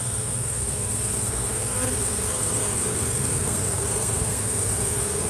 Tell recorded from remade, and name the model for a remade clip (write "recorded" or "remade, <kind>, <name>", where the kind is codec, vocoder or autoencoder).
remade, codec, SNAC